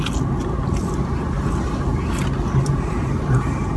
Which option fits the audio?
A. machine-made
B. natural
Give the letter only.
B